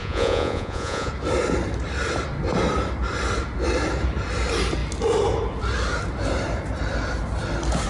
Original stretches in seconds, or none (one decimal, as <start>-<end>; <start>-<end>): 1.1-7.9